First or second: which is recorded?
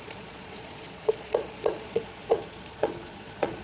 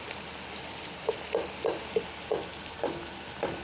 second